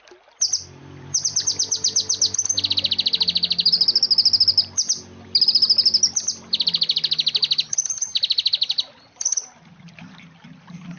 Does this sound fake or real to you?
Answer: real